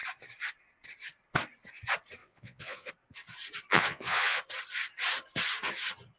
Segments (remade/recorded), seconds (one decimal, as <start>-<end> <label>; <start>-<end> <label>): 0.0-2.2 recorded; 2.2-2.9 remade; 2.9-3.7 recorded; 3.7-4.4 remade; 4.4-6.2 recorded